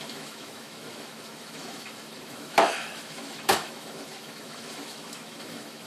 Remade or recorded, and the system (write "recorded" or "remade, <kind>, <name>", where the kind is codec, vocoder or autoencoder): remade, autoencoder, DAC-VAE